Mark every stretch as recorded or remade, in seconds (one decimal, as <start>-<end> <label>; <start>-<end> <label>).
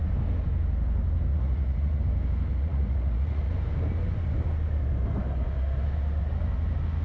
0.0-1.3 recorded; 1.3-2.0 remade; 2.0-2.5 recorded; 2.5-3.5 remade; 3.5-7.0 recorded